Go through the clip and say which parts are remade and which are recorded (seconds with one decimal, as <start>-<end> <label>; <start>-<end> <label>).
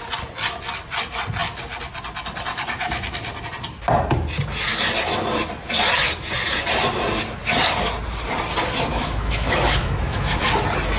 0.0-8.9 recorded; 8.9-10.4 remade; 10.4-11.0 recorded